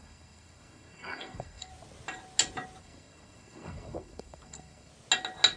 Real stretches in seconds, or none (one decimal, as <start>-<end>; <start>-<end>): 1.7-2.8; 4.9-5.6